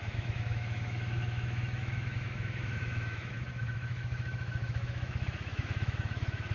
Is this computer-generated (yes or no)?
yes